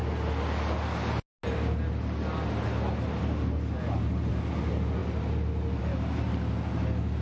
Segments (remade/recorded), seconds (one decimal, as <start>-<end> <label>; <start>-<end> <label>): 0.0-7.2 recorded